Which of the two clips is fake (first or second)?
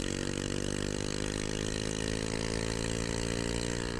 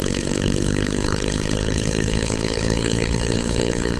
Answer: second